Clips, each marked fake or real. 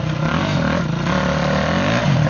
real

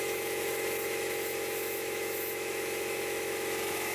fake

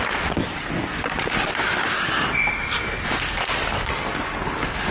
real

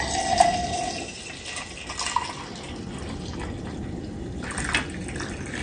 real